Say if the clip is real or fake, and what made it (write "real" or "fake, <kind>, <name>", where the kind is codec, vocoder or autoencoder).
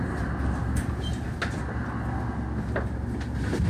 real